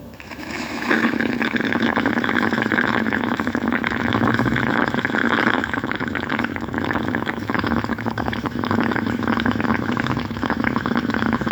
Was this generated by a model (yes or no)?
yes